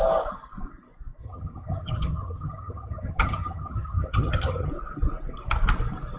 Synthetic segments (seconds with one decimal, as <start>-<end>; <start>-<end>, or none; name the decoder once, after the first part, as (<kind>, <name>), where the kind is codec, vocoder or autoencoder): 1.2-4.7 (vocoder, HiFi-GAN)